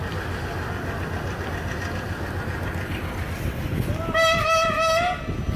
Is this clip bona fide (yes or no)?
yes